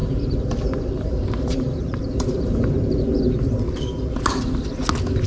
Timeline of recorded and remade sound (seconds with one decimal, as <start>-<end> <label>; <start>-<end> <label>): 0.0-3.2 remade; 3.2-5.3 recorded

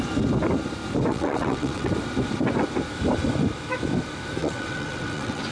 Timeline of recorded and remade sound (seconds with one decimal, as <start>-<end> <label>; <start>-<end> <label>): 0.0-1.1 recorded; 1.1-1.9 remade; 1.9-4.4 recorded; 4.4-5.5 remade

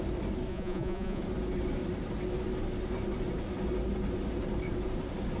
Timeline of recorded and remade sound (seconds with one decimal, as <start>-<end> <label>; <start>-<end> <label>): 0.0-0.5 recorded; 0.5-1.2 remade; 1.2-5.4 recorded

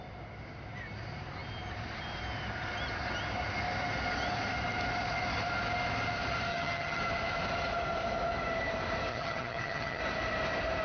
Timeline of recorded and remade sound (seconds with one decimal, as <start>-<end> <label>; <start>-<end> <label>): 0.0-6.5 recorded; 6.5-7.0 remade; 7.0-9.1 recorded; 9.1-10.0 remade; 10.0-10.8 recorded

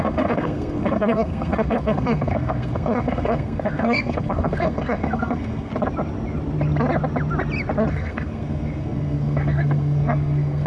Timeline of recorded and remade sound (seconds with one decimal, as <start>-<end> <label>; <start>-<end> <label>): 0.0-5.7 remade; 5.7-7.9 recorded; 7.9-10.7 remade